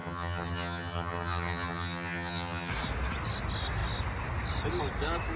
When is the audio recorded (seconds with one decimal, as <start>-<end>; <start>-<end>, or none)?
2.7-5.4